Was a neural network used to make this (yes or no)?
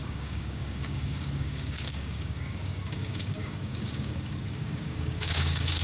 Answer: yes